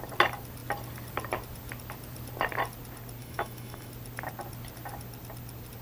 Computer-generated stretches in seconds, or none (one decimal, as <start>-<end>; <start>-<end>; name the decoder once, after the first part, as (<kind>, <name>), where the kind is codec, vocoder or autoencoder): 3.2-3.9 (autoencoder, DAC-VAE)